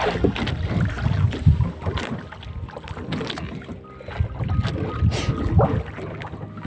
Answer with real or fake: real